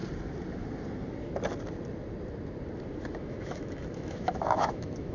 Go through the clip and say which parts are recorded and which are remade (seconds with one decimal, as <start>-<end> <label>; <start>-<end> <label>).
0.0-3.1 recorded; 3.1-5.1 remade